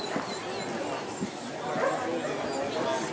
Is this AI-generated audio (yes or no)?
no